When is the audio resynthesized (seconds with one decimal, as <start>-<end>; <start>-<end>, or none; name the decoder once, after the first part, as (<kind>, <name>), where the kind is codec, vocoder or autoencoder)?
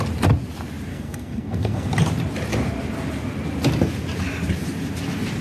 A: 0.9-1.9 (codec, SNAC)